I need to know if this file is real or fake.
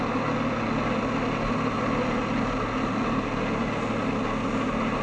real